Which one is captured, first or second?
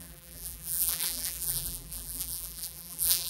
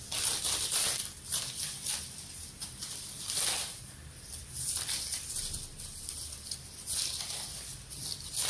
second